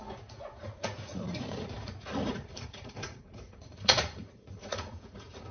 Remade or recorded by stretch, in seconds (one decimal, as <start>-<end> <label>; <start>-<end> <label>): 0.0-5.5 remade

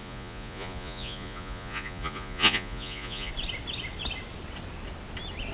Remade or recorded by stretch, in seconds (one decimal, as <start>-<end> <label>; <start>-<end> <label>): 0.0-3.3 remade; 3.3-5.5 recorded

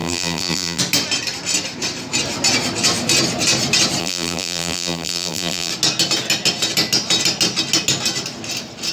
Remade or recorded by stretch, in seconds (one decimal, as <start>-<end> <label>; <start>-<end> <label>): 0.0-0.8 remade; 0.8-4.0 recorded; 4.0-5.7 remade; 5.7-8.9 recorded

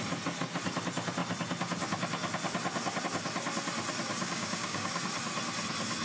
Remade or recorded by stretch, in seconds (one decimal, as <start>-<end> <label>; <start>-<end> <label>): 0.0-4.1 recorded; 4.1-5.0 remade; 5.0-6.0 recorded

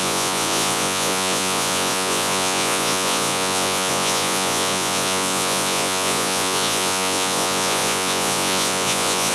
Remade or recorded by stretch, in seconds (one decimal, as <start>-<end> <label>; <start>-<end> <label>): 0.0-9.3 remade

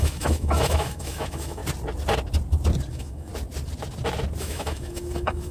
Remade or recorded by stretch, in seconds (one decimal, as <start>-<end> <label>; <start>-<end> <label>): 0.0-1.6 remade; 1.6-2.9 recorded; 2.9-3.3 remade; 3.3-4.4 recorded; 4.4-5.5 remade

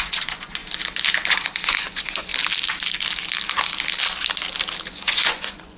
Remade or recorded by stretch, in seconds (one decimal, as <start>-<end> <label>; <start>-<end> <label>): 0.0-0.6 remade; 0.6-1.3 recorded; 1.3-2.3 remade; 2.3-4.9 recorded; 4.9-5.8 remade